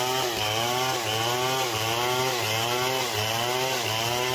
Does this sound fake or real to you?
real